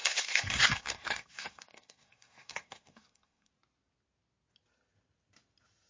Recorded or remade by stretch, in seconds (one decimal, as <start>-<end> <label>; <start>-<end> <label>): 0.0-3.5 remade; 3.5-5.9 recorded